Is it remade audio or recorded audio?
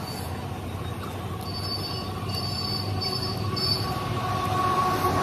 recorded